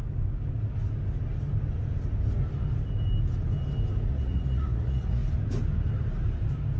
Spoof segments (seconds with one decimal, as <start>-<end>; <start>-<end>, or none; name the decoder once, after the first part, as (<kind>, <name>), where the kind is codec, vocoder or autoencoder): 4.1-5.2 (vocoder, Vocos)